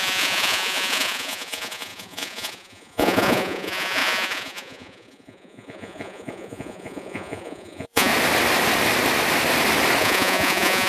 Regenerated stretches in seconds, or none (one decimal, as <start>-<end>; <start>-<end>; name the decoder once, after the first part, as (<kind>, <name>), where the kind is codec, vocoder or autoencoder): 0.0-8.1 (vocoder, Vocos); 10.0-10.9